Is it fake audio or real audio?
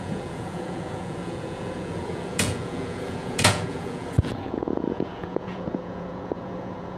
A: fake